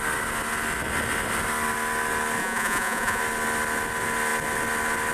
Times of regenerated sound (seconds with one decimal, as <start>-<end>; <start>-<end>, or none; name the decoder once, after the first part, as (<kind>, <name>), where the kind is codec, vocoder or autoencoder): 2.4-3.2 (vocoder, Vocos)